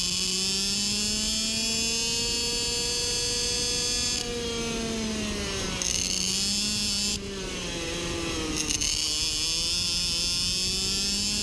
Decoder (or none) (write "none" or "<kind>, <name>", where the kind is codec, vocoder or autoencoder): none